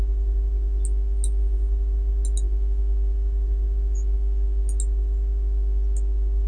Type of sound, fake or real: real